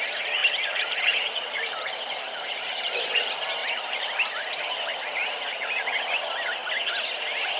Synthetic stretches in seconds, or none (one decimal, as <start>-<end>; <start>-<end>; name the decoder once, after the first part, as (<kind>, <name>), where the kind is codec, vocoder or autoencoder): 0.4-3.2 (vocoder, BigVGAN v2); 3.6-5.8